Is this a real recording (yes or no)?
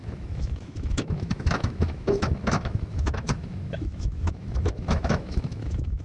no